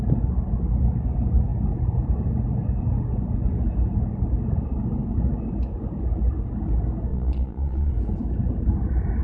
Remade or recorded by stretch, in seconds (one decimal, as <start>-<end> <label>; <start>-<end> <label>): 0.0-7.1 recorded; 7.1-7.9 remade; 7.9-9.2 recorded